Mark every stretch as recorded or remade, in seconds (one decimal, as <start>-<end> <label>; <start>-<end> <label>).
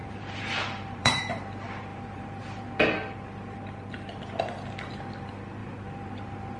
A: 0.0-1.2 remade; 1.2-1.9 recorded; 1.9-2.6 remade; 2.6-5.6 recorded; 5.6-6.6 remade